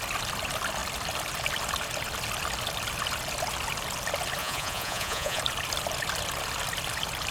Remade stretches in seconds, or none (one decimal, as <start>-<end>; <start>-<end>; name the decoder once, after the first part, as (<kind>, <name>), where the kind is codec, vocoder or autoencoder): 4.4-5.4 (vocoder, Vocos)